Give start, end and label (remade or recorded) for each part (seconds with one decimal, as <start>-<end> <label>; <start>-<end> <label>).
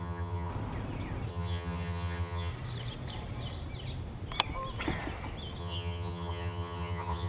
0.0-0.5 remade; 0.5-1.3 recorded; 1.3-2.5 remade; 2.5-5.6 recorded; 5.6-7.3 remade